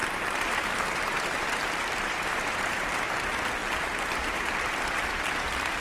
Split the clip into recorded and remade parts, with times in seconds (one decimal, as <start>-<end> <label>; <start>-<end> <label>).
0.0-2.9 remade; 2.9-3.6 recorded; 3.6-4.4 remade; 4.4-5.8 recorded